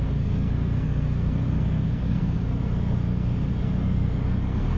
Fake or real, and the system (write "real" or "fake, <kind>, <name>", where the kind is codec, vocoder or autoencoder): fake, codec, SNAC